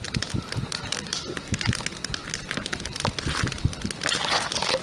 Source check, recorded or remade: recorded